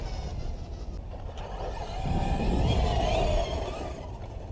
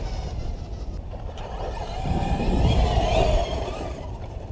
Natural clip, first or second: first